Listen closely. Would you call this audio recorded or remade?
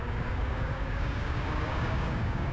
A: remade